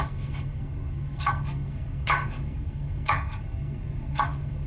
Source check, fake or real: fake